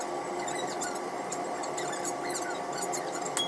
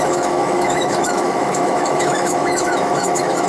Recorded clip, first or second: first